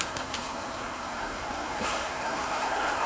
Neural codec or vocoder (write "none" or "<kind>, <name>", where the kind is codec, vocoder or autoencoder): codec, SNAC